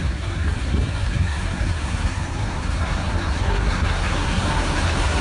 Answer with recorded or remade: remade